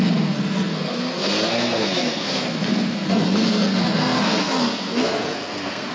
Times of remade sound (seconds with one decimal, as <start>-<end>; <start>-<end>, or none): 0.0-5.9